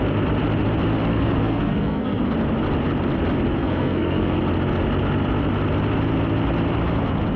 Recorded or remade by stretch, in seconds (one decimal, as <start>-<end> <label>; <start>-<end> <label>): 0.0-1.1 recorded; 1.1-2.2 remade; 2.2-3.6 recorded; 3.6-4.4 remade; 4.4-7.4 recorded